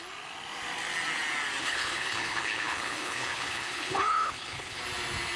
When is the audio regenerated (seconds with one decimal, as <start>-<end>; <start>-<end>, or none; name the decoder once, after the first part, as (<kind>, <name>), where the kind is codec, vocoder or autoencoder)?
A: 1.6-4.8 (codec, HILCodec)